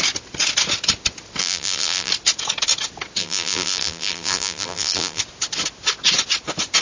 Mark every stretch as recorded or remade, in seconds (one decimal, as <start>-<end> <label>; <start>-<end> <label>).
0.0-1.4 recorded; 1.4-2.1 remade; 2.1-3.2 recorded; 3.2-5.2 remade; 5.2-6.8 recorded